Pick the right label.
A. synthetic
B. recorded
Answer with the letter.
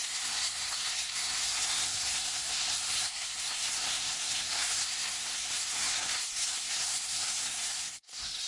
A